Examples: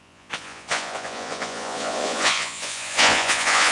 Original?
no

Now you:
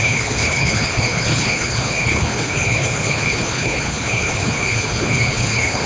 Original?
no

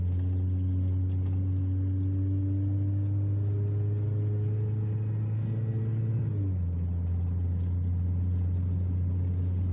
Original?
yes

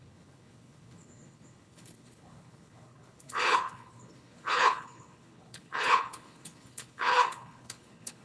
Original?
no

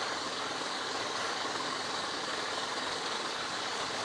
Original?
no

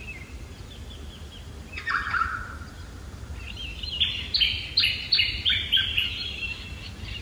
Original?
yes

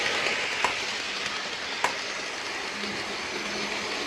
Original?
yes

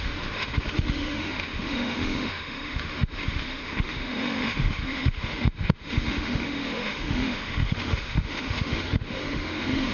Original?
no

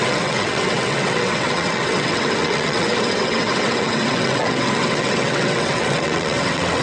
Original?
no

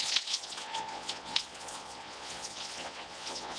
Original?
no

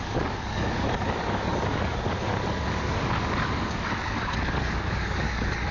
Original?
no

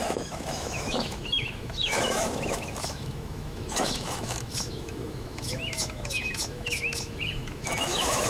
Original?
no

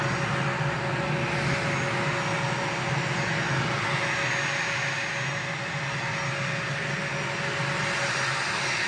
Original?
yes